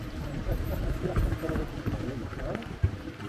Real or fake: fake